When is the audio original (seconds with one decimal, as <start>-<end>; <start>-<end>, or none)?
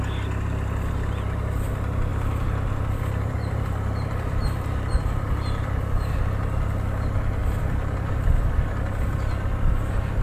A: 0.0-2.1; 6.2-7.4; 8.4-10.2